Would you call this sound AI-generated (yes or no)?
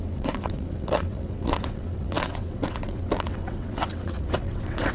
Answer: yes